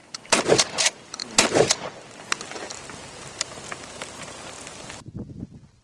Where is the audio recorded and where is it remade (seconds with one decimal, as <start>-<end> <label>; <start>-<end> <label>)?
0.0-5.8 recorded